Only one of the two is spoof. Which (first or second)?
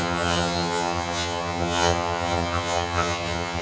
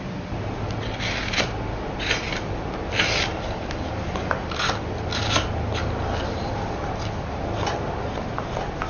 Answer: first